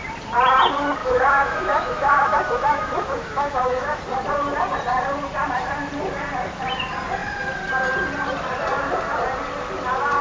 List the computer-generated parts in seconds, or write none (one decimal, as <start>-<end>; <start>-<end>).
1.0-4.0